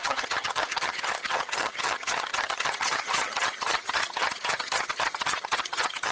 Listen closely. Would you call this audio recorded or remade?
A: remade